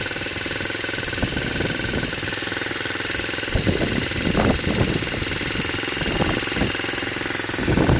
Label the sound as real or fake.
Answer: real